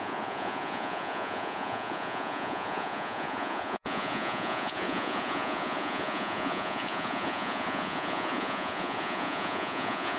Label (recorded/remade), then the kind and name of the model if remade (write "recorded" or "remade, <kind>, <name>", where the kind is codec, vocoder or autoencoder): remade, vocoder, Vocos